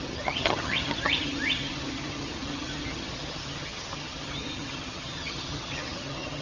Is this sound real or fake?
fake